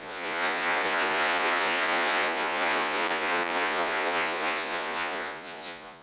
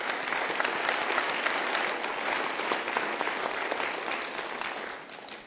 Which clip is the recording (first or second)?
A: second